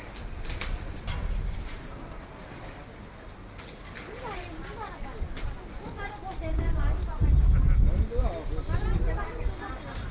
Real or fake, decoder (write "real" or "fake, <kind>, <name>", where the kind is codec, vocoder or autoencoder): real